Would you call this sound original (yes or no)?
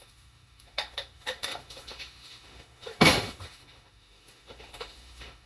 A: no